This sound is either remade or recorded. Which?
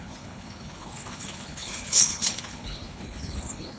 remade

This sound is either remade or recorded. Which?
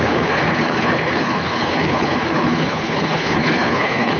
remade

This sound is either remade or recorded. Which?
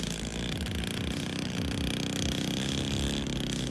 recorded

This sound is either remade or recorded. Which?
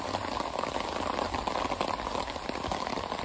recorded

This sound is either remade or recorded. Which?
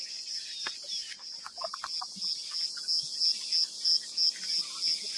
recorded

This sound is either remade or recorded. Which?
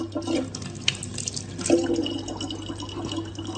recorded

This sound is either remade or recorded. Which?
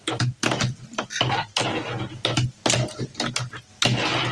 recorded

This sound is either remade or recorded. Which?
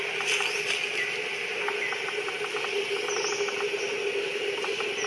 recorded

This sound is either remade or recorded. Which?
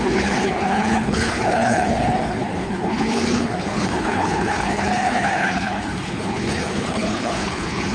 remade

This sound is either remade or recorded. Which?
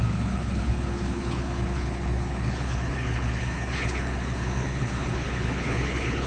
remade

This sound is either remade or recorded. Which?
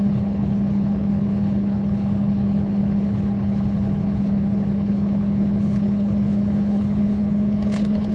remade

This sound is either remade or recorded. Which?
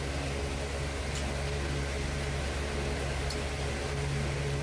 recorded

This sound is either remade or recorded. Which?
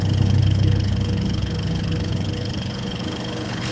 remade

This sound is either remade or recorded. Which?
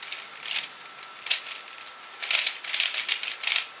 recorded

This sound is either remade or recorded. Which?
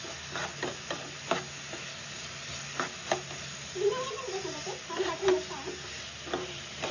recorded